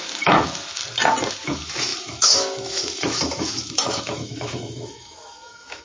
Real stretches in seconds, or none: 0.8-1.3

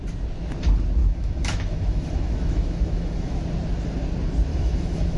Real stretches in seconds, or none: 0.0-1.0; 3.4-4.5

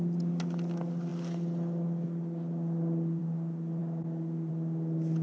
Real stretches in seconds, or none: 0.0-5.2

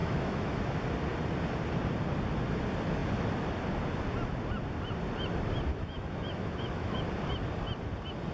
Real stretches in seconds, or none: 0.6-5.7; 7.0-8.3

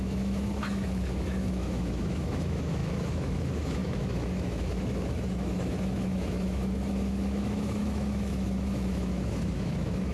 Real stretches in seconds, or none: none

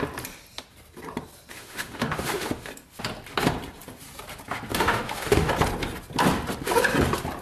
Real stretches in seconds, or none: 0.0-1.5; 2.7-4.7; 5.5-7.4

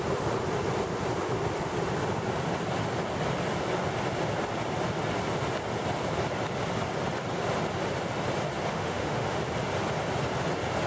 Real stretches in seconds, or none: 0.0-8.7; 9.4-10.9

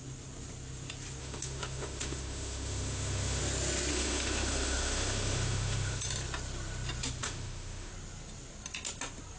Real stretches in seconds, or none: 0.0-1.2; 3.4-3.9; 6.0-7.2; 7.9-9.4